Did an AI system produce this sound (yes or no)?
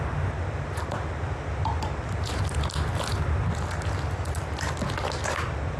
no